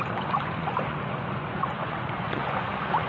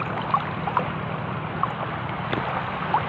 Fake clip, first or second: first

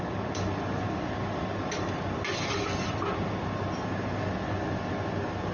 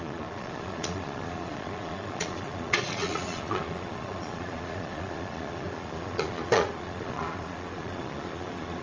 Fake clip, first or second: second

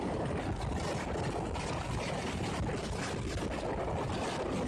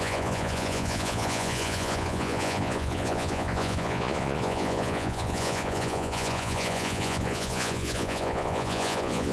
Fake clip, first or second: second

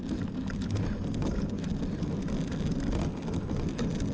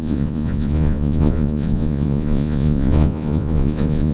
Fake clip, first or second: second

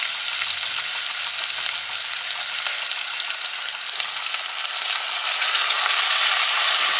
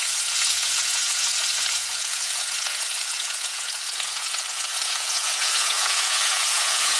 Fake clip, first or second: second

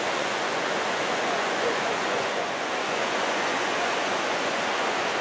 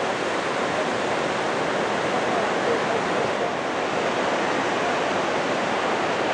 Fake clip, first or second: first